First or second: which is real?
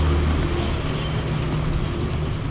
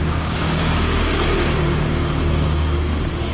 first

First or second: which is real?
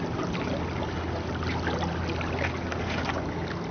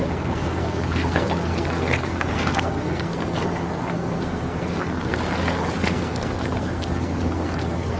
first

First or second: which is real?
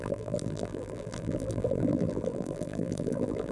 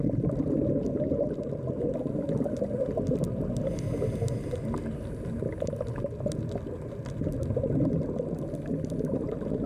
second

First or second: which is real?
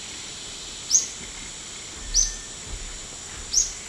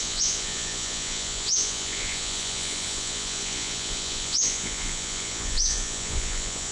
first